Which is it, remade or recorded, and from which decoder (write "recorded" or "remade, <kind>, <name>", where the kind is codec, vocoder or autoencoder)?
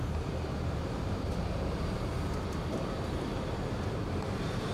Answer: remade, vocoder, BigVGAN v2